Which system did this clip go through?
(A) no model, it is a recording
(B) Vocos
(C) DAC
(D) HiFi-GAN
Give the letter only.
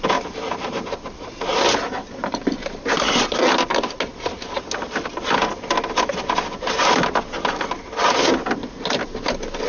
A